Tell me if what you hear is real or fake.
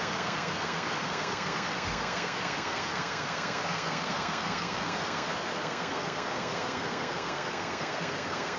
fake